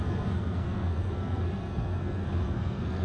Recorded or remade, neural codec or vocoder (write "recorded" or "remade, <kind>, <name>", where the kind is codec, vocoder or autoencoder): remade, codec, SNAC